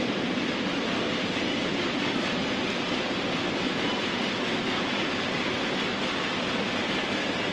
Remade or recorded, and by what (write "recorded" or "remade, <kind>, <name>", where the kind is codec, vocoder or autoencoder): recorded